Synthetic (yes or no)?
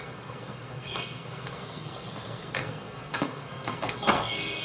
yes